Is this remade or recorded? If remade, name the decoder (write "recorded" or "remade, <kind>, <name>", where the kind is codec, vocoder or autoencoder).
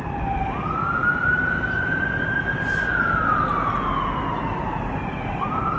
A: recorded